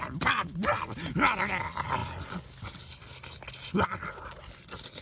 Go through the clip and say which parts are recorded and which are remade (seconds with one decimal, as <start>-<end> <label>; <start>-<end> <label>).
0.0-5.0 recorded